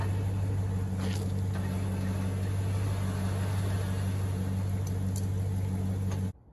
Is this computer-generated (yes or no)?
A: no